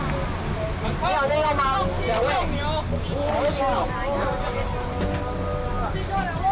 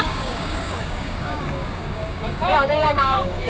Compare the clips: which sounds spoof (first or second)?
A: second